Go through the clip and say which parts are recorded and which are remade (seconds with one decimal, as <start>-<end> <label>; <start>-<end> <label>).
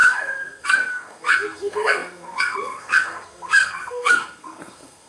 0.0-5.1 remade